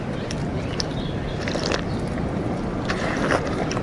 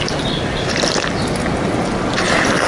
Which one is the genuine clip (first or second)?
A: second